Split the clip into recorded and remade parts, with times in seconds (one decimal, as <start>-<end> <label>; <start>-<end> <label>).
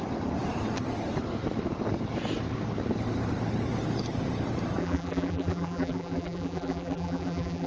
0.0-4.8 recorded; 4.8-7.7 remade